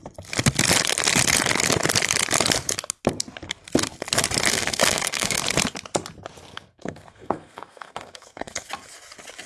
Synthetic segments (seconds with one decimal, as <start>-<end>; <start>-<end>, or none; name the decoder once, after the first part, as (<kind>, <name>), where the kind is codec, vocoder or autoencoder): 4.5-5.4 (codec, SNAC); 6.5-8.7